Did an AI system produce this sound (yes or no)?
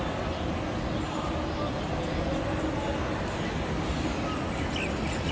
no